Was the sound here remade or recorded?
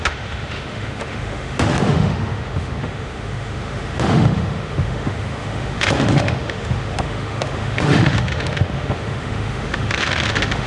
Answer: remade